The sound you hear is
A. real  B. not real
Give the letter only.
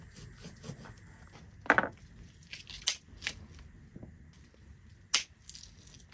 A